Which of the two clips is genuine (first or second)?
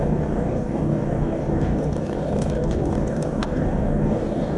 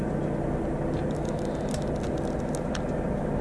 second